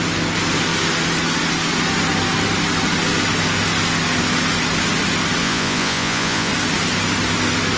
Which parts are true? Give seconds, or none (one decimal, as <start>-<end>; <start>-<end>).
0.0-5.4; 6.5-7.8